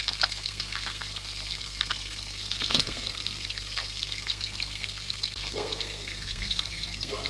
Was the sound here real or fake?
fake